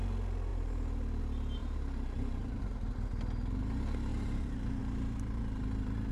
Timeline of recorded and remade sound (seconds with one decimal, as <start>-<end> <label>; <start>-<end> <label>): 0.0-0.5 recorded; 0.5-1.2 remade; 1.2-1.6 recorded; 1.6-2.6 remade; 2.6-4.1 recorded; 4.1-4.8 remade; 4.8-6.1 recorded